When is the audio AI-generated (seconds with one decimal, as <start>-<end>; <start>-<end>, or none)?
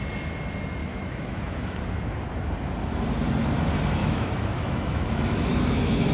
0.8-1.8; 4.0-6.1